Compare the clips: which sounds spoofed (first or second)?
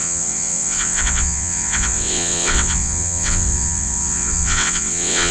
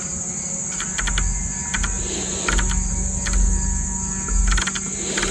first